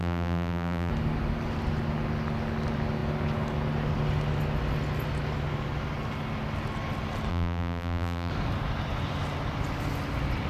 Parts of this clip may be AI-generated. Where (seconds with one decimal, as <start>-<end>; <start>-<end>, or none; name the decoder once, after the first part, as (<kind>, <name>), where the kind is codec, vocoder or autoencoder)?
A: 0.0-0.9 (vocoder, BigVGAN v2); 7.3-8.3